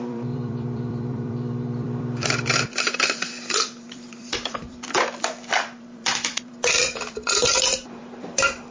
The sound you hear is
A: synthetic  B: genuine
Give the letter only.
A